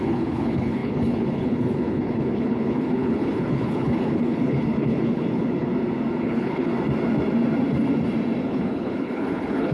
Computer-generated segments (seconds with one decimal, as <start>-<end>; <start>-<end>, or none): 0.0-5.7; 6.2-6.7; 8.4-9.7

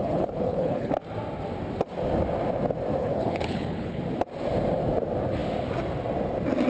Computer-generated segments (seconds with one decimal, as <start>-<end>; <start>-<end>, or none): 0.0-0.9; 3.0-4.0

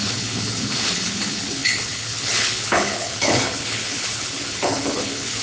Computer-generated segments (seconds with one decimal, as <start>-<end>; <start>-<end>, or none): 0.0-5.4

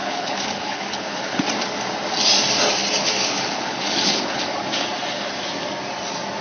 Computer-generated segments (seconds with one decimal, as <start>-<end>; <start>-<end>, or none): 0.0-1.4; 3.3-4.5

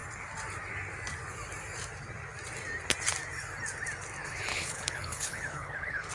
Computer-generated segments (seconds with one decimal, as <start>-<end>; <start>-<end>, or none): 4.5-6.1

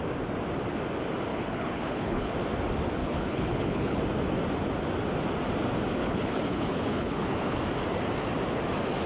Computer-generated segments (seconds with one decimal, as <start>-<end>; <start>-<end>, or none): 1.3-2.3; 3.0-4.0; 6.0-7.6

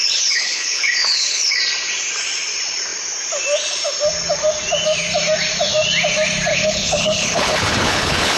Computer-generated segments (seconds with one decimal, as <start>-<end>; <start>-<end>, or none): 0.0-1.6; 6.5-8.4